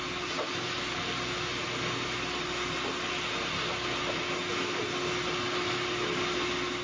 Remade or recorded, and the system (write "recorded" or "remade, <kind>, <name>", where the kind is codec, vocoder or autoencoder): recorded